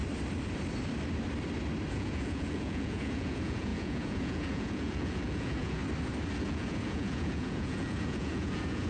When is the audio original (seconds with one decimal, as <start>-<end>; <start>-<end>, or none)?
0.0-1.9; 5.8-6.4